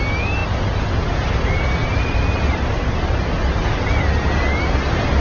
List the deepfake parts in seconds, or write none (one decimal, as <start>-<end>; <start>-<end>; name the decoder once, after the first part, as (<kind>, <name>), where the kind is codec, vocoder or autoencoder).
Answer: 1.8-3.2 (vocoder, BigVGAN v2)